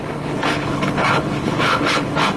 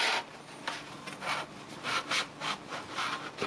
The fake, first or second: first